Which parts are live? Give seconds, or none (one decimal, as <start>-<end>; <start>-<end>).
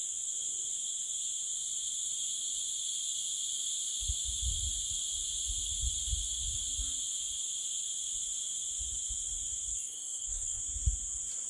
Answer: 0.0-9.7; 10.6-11.5